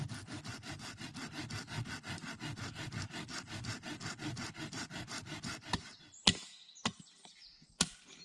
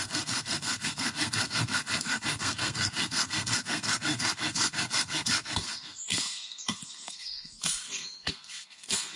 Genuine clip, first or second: first